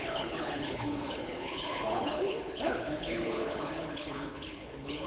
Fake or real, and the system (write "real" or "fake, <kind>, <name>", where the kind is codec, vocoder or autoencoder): fake, codec, HILCodec